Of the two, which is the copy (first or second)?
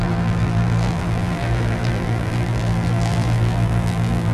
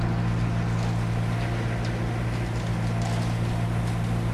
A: first